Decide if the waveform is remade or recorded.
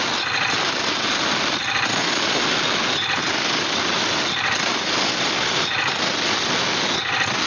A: recorded